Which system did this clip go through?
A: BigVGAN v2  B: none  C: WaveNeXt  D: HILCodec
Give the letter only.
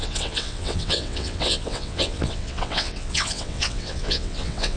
C